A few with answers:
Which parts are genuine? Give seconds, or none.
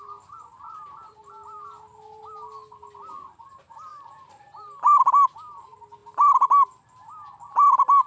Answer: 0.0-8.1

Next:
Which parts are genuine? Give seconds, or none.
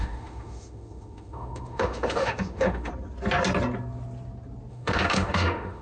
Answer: 2.9-4.7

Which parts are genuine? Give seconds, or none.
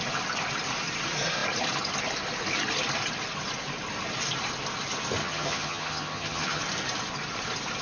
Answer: 0.0-5.2; 6.6-7.8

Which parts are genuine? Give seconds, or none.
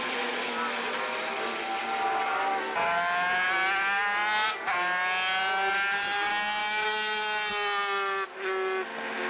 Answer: 0.0-9.3